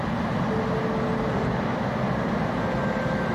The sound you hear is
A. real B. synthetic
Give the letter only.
A